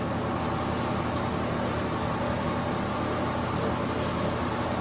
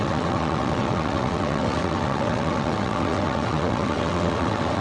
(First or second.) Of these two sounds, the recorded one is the first